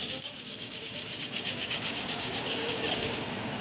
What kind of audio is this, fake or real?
fake